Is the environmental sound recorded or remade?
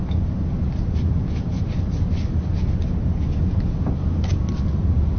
recorded